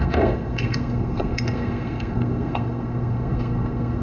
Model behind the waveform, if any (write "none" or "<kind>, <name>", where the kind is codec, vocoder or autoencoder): codec, SNAC